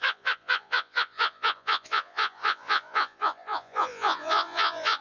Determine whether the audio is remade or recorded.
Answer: remade